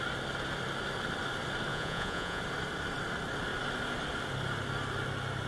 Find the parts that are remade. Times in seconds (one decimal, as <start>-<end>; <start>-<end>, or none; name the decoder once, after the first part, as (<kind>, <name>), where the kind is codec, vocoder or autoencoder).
1.7-2.4 (vocoder, Vocos)